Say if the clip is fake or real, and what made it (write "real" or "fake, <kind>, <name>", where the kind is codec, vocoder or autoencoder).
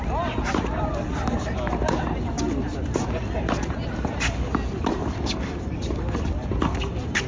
real